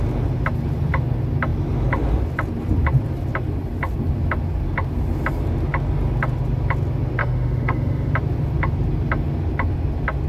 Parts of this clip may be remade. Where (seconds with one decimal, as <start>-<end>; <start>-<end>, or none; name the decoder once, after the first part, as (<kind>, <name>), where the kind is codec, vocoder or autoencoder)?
7.2-8.1 (autoencoder, DAC-VAE)